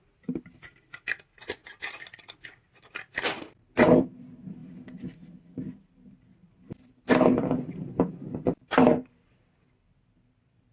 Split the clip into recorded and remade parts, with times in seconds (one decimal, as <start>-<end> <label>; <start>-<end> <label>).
0.0-1.6 remade; 1.6-3.6 recorded; 3.6-10.7 remade